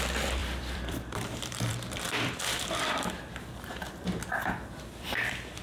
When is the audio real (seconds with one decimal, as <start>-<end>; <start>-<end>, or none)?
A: 0.0-0.4; 3.8-5.6